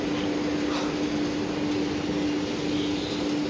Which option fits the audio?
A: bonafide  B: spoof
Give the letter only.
A